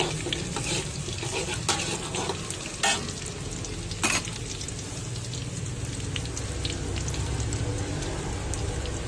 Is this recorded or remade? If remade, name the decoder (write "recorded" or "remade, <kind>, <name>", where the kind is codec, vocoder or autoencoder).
recorded